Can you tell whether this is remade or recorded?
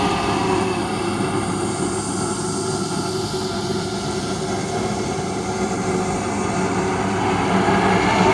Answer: recorded